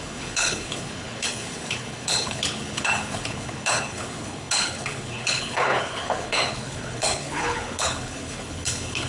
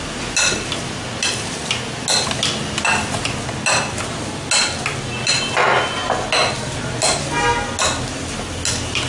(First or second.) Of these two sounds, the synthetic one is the first